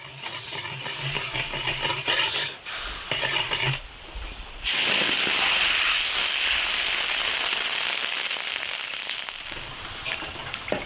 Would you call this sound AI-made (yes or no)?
no